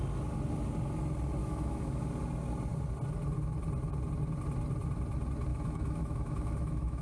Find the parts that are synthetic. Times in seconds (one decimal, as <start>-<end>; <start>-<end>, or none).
1.4-2.1; 5.5-7.0